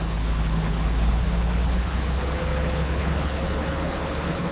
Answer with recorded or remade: remade